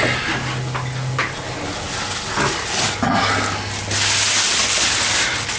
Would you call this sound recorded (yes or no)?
yes